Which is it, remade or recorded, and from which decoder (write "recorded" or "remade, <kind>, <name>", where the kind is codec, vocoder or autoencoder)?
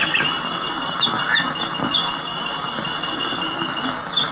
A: recorded